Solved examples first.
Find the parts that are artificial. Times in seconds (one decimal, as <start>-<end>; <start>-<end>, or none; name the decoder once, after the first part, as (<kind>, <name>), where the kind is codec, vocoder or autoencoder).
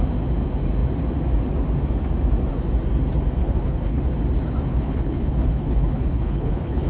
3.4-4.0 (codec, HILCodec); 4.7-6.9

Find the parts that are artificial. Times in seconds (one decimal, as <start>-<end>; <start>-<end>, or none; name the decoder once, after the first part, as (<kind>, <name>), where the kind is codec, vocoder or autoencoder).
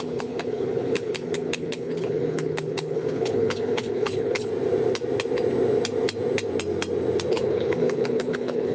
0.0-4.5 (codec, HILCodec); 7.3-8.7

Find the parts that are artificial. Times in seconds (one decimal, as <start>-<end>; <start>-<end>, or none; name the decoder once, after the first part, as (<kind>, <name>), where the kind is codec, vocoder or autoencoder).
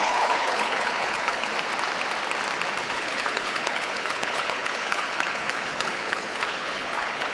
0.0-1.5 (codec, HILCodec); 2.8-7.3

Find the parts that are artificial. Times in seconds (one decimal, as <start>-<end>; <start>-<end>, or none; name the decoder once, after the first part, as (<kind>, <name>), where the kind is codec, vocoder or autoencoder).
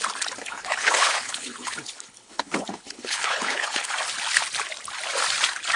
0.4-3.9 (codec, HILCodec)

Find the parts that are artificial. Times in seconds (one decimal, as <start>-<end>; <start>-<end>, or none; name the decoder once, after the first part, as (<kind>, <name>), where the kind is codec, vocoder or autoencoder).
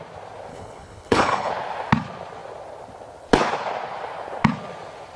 0.5-1.5 (codec, HILCodec)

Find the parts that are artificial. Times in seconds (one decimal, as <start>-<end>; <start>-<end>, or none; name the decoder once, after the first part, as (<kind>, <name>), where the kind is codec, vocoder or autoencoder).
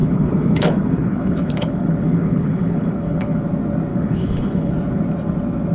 0.0-3.4 (codec, HILCodec); 3.9-4.7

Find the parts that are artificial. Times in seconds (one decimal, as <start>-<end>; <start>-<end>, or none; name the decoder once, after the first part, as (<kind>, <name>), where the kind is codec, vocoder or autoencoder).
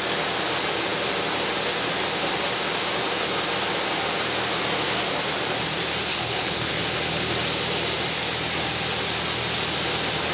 6.1-6.8 (codec, HILCodec)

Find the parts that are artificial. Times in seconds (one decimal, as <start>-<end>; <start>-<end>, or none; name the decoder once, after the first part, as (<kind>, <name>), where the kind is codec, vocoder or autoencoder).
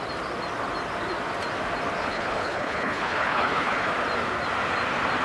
2.0-3.9 (codec, HILCodec)